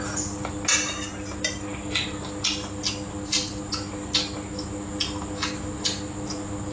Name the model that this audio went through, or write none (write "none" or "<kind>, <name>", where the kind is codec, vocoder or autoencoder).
none